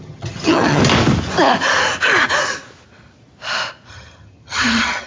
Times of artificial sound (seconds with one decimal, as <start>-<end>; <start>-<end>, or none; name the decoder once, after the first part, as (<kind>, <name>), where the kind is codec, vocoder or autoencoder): 0.0-0.8 (vocoder, HiFi-GAN); 3.9-5.1